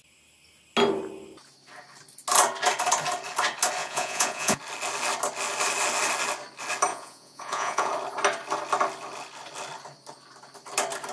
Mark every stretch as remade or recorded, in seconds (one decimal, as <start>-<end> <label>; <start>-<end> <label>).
0.0-3.8 recorded; 3.8-4.6 remade; 4.6-6.9 recorded; 6.9-7.9 remade; 7.9-11.1 recorded